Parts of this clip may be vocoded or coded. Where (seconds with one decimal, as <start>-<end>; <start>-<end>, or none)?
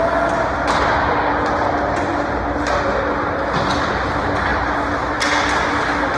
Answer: 4.5-5.2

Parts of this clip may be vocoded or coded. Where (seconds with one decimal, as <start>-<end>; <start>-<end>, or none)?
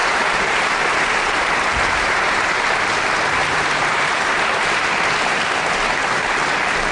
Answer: 0.0-2.8; 3.4-4.8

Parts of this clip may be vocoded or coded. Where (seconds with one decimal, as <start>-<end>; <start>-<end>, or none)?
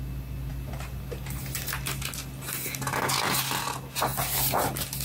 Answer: 0.5-1.4